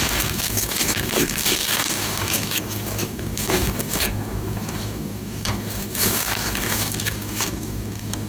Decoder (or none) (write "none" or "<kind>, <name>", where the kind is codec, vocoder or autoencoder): codec, DAC